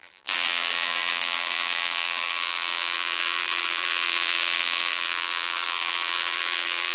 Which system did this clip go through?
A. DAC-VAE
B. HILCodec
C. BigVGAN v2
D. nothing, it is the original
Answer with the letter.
C